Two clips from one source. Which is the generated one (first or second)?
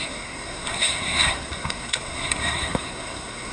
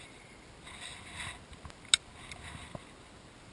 first